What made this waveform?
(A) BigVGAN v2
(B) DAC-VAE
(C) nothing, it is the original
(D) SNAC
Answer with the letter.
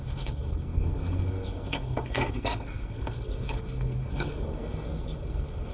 D